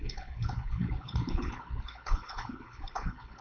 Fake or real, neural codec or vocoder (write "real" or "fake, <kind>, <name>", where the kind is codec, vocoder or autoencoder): fake, codec, HILCodec